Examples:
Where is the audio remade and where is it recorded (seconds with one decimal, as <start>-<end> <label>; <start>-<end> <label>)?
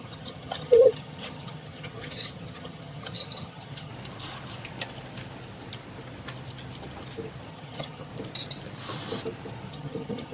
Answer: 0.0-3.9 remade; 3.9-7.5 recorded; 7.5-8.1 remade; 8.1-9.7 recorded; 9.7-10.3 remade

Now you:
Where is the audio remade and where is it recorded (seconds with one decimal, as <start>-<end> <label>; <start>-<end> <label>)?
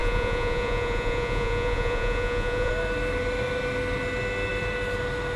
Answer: 0.0-2.7 remade; 2.7-5.4 recorded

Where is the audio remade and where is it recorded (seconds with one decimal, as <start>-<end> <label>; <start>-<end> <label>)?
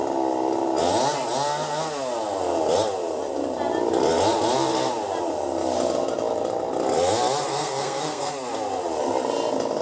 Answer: 0.0-7.5 recorded; 7.5-8.3 remade; 8.3-9.8 recorded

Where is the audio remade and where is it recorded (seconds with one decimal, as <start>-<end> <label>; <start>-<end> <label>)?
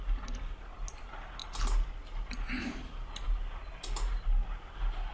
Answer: 0.0-5.1 recorded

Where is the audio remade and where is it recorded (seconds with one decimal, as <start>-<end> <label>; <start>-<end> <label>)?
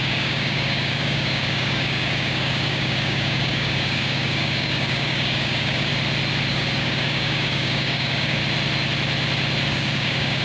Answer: 0.0-5.9 remade; 5.9-6.5 recorded; 6.5-8.4 remade; 8.4-9.7 recorded; 9.7-10.4 remade